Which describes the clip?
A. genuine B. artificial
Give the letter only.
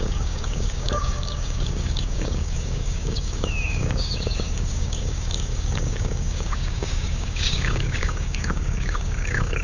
B